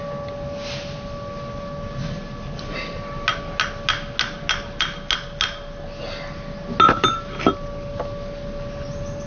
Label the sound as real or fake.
real